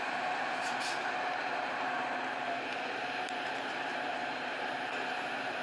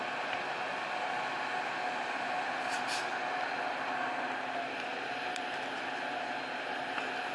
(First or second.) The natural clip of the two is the second